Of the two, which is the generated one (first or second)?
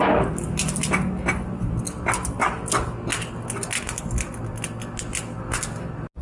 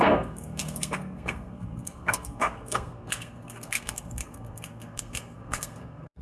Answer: second